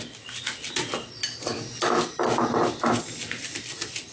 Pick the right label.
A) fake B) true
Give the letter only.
B